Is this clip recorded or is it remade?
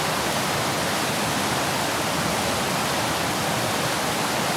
recorded